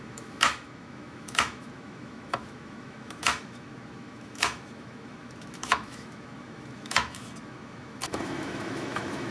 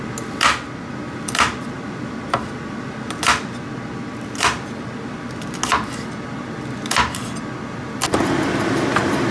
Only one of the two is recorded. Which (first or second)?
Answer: second